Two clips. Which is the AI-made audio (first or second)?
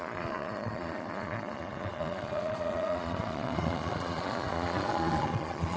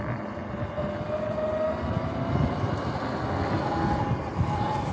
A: first